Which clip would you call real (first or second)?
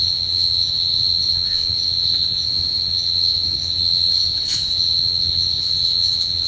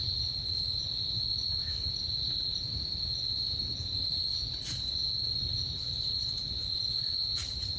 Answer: second